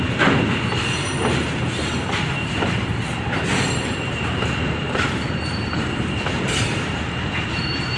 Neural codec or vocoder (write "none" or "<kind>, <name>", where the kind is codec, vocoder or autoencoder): vocoder, BigVGAN v2